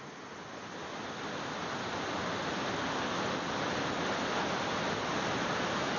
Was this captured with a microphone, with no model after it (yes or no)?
yes